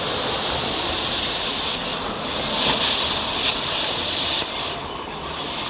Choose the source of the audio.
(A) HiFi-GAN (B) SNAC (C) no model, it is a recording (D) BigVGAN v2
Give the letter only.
C